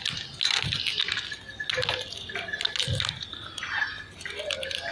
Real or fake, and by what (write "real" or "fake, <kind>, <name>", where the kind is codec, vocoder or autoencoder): real